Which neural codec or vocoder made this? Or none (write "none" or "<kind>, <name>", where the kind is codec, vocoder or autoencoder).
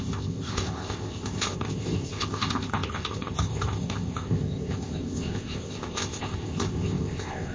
codec, ZipCodec